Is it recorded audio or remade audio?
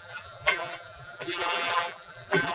remade